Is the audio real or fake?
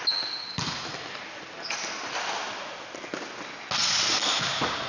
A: real